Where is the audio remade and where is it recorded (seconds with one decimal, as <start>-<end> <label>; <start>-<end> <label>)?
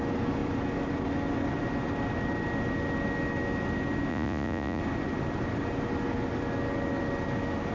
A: 0.0-4.1 recorded; 4.1-4.8 remade; 4.8-7.7 recorded